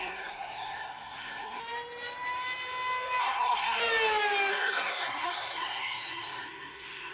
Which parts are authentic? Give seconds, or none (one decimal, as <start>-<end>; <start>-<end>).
1.6-3.2; 3.8-4.5